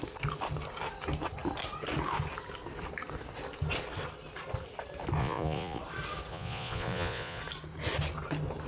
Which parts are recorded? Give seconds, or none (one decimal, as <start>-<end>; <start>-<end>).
0.0-5.2; 5.8-6.3; 7.4-8.7